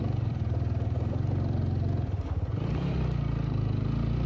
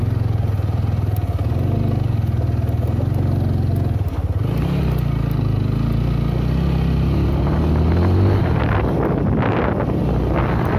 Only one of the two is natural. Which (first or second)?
second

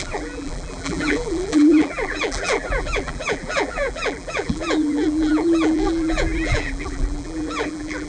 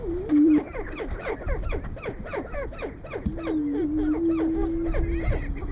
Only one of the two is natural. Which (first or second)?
second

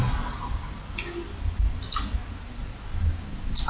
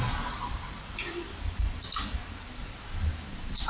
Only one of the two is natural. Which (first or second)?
first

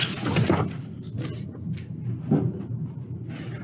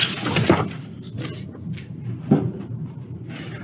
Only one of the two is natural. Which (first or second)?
first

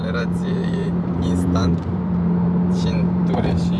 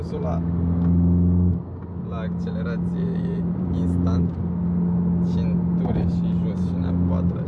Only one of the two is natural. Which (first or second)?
second